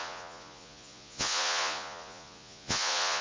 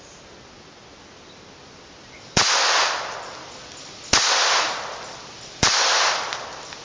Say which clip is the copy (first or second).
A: first